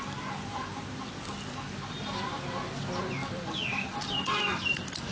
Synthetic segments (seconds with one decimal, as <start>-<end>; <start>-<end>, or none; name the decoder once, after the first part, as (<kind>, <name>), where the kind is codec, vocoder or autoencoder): 0.5-1.1 (vocoder, BigVGAN v2); 3.2-3.8